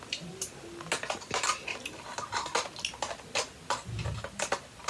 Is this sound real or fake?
real